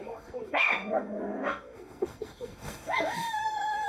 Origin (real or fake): fake